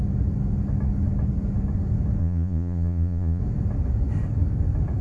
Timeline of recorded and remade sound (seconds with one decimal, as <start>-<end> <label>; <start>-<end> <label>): 0.0-2.2 recorded; 2.2-3.4 remade; 3.4-5.0 recorded